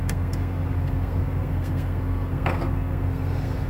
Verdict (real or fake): fake